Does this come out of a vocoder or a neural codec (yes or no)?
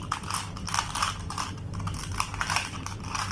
no